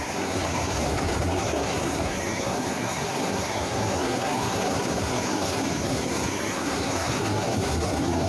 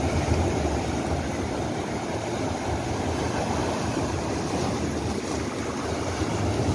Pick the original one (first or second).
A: second